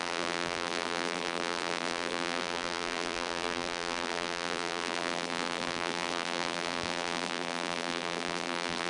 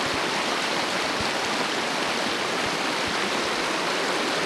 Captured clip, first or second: second